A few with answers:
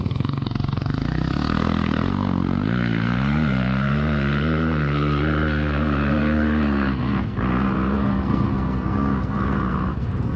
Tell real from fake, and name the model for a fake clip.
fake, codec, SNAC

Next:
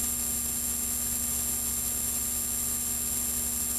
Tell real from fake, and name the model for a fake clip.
real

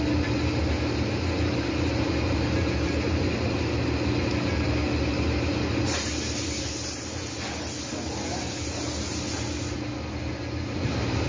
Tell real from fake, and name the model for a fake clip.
real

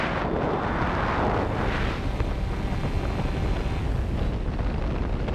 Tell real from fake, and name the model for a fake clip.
real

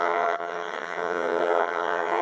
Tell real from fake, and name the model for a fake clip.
fake, vocoder, HiFi-GAN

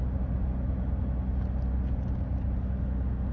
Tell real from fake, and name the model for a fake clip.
real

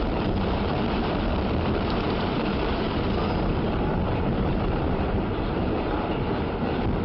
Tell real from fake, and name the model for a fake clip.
fake, vocoder, BigVGAN v2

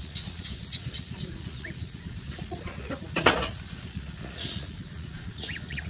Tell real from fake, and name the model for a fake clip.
fake, vocoder, Vocos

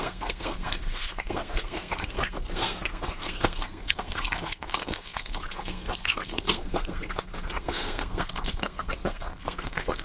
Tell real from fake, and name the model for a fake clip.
fake, codec, SNAC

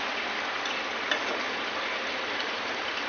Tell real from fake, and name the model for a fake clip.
real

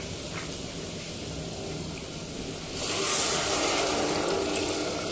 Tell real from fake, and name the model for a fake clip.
real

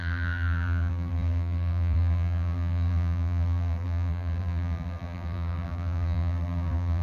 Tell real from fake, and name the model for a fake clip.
fake, vocoder, BigVGAN v2